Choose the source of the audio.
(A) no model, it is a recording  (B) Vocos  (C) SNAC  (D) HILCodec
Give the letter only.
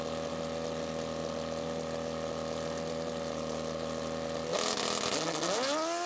A